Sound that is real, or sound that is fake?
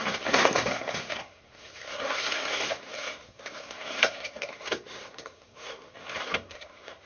fake